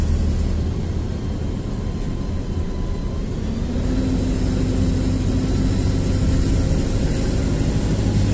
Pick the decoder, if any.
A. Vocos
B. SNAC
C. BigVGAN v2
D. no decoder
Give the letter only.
D